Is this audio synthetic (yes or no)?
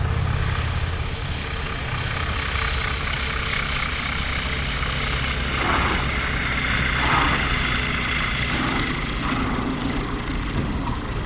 no